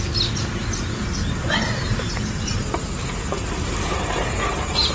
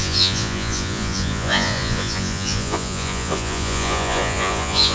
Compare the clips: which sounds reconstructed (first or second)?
second